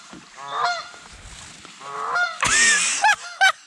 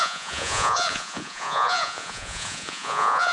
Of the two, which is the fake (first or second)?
second